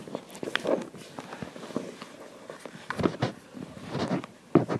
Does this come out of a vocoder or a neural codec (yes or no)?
no